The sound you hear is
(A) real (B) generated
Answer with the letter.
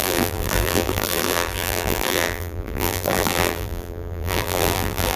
B